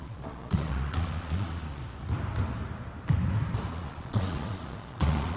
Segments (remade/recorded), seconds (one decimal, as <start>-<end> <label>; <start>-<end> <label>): 0.0-1.8 remade; 1.8-3.7 recorded; 3.7-5.4 remade

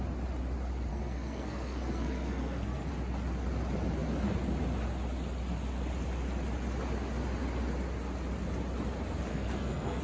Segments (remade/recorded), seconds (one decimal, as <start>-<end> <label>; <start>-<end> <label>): 0.0-0.9 recorded; 0.9-2.9 remade; 2.9-9.3 recorded; 9.3-10.0 remade

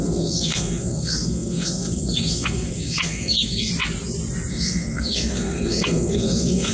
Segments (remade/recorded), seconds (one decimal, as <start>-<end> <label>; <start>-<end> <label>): 0.0-3.7 remade; 3.7-4.5 recorded; 4.5-6.7 remade

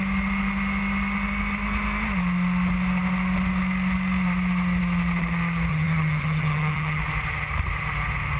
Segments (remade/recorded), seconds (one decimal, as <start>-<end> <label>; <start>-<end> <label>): 0.0-5.7 recorded; 5.7-7.0 remade; 7.0-8.4 recorded

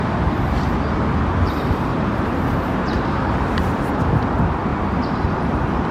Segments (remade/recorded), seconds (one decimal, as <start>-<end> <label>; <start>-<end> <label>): 0.0-1.9 recorded; 1.9-4.0 remade; 4.0-5.9 recorded